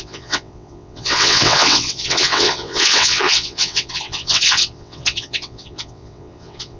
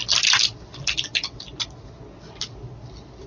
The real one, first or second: second